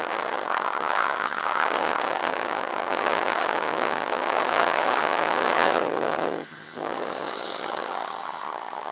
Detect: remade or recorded remade